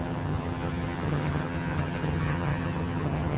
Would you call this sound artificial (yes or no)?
yes